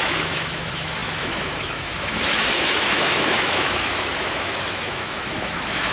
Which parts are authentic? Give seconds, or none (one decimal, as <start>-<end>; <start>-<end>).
none